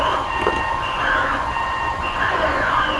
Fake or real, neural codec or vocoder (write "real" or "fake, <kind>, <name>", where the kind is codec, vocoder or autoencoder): fake, vocoder, Vocos